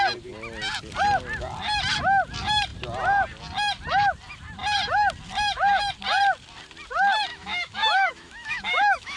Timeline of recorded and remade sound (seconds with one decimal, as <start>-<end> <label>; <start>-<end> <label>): 0.0-7.3 recorded; 7.3-9.2 remade